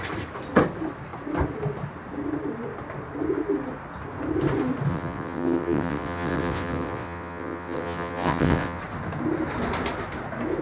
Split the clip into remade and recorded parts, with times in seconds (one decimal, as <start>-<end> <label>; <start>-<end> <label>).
0.0-4.9 recorded; 4.9-8.8 remade; 8.8-10.6 recorded